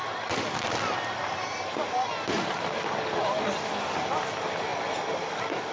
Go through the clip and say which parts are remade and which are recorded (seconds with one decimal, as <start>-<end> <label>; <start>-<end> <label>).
0.0-5.7 recorded

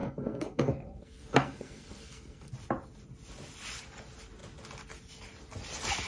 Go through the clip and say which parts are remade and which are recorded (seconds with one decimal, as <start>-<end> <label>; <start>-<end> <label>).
0.0-2.5 remade; 2.5-6.1 recorded

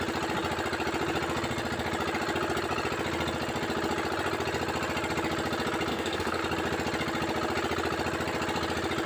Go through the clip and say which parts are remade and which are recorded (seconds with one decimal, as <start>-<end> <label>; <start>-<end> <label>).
0.0-5.9 recorded; 5.9-6.4 remade; 6.4-9.1 recorded

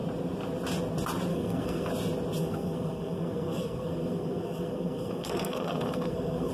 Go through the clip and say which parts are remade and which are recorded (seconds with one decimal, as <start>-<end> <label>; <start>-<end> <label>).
0.0-1.3 recorded; 1.3-1.9 remade; 1.9-2.4 recorded; 2.4-6.5 remade

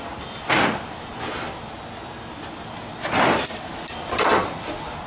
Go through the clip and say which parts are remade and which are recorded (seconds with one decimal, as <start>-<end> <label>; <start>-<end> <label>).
0.0-5.1 recorded